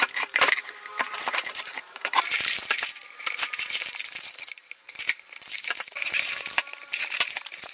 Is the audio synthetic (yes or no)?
yes